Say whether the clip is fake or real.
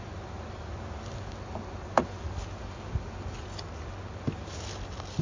real